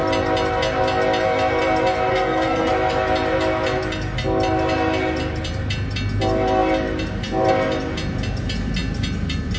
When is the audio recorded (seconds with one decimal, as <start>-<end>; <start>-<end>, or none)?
0.0-2.1; 2.7-9.6